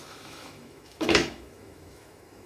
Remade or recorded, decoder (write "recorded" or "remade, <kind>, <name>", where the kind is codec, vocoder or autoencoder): remade, autoencoder, DAC-VAE